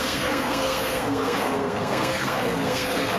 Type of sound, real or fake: fake